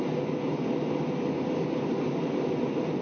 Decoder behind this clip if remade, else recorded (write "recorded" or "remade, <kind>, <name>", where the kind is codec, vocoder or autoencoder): recorded